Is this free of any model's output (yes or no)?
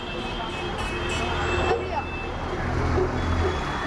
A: yes